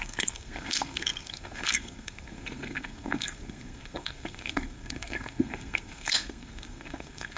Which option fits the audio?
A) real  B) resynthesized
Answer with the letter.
B